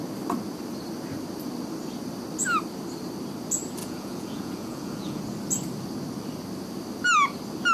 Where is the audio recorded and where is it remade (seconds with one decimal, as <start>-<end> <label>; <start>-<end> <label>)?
0.0-3.8 recorded; 3.8-5.2 remade; 5.2-7.7 recorded